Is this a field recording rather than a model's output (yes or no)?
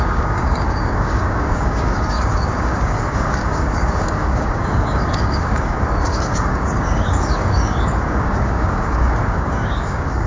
no